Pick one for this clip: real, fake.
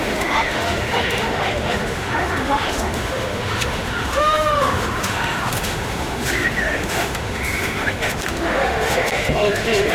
fake